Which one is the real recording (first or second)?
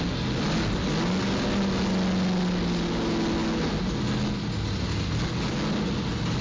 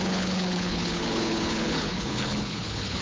first